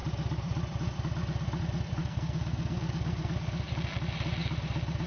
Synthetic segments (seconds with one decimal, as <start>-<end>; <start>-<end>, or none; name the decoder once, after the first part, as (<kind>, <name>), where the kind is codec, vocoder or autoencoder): 2.0-3.3 (codec, SNAC)